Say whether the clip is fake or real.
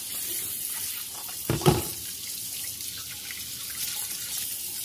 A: real